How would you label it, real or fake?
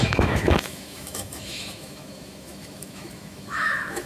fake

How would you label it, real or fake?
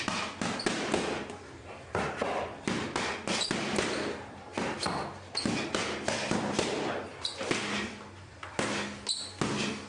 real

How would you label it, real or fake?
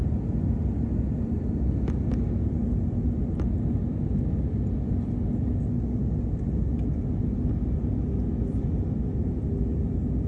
real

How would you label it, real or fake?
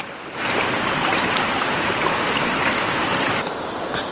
real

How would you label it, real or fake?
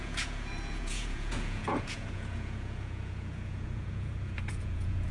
fake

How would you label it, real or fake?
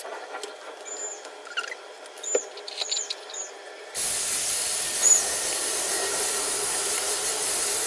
real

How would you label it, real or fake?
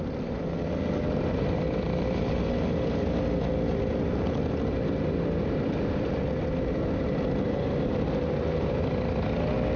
real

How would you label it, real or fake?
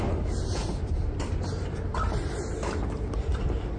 real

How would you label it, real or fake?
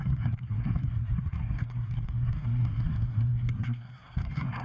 fake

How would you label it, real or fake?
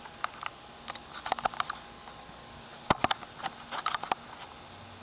real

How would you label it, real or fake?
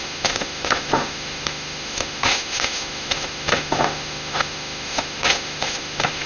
fake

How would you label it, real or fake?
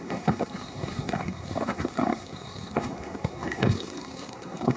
fake